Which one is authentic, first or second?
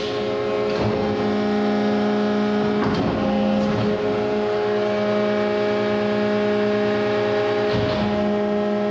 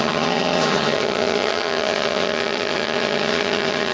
first